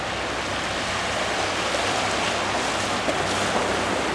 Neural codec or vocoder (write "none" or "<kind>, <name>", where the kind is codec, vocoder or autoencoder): none